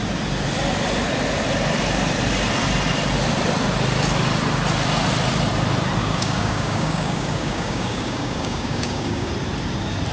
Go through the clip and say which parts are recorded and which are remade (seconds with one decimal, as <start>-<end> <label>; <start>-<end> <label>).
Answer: 0.0-6.0 recorded; 6.0-9.3 remade; 9.3-10.1 recorded